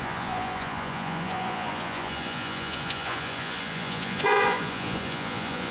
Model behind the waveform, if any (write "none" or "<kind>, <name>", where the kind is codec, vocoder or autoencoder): vocoder, Vocos